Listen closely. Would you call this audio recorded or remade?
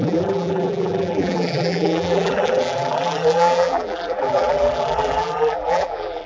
remade